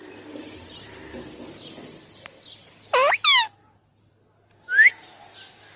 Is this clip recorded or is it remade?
recorded